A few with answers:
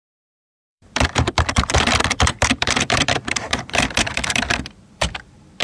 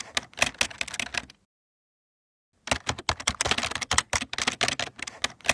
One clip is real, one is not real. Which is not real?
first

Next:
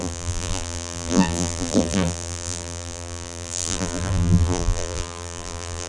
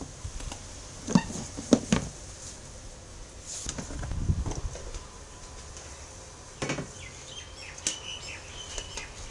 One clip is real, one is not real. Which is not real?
first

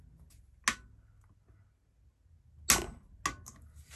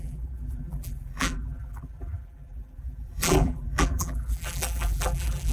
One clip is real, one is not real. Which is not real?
second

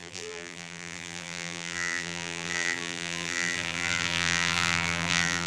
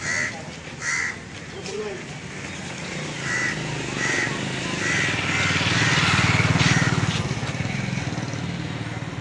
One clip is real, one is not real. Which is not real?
first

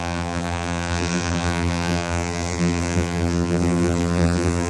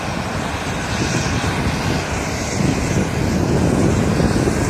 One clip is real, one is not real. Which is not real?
first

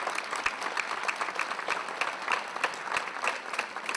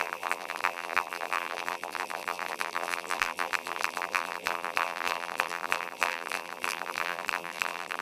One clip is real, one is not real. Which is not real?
second